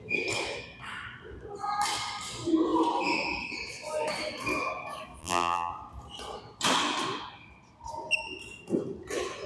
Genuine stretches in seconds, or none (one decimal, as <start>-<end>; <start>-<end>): 0.0-5.2; 5.7-9.5